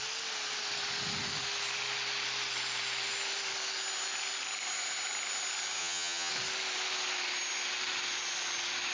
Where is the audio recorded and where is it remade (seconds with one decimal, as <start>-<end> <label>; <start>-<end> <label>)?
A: 0.0-5.8 recorded; 5.8-6.3 remade; 6.3-8.9 recorded